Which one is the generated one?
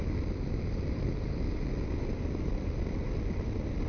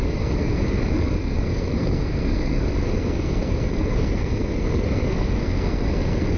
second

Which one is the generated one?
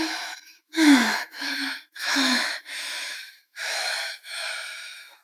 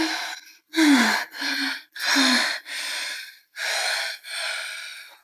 first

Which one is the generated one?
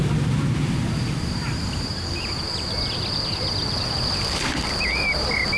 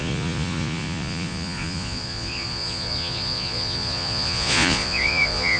second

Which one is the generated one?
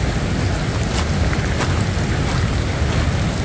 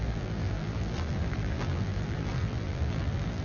second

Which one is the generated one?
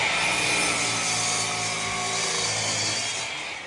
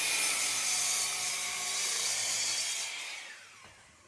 second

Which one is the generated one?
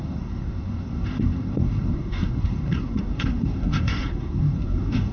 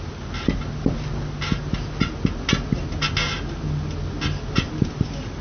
first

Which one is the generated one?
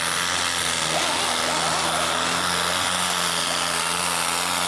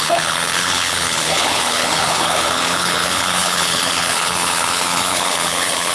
second